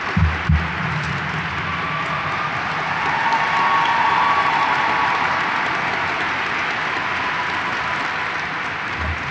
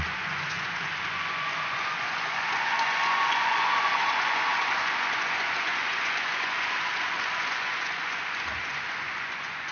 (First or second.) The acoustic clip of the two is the first